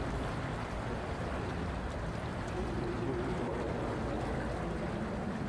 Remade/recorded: recorded